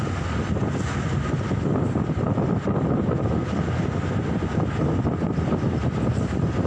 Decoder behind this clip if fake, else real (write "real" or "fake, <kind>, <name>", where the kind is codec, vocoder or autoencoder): real